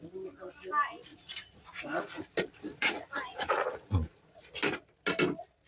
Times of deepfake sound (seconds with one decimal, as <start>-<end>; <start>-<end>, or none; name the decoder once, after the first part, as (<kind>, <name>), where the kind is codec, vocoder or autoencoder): 1.1-2.2 (vocoder, Vocos); 2.7-4.4